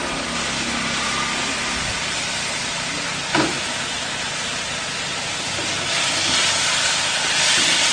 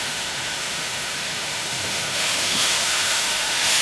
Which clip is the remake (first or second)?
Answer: second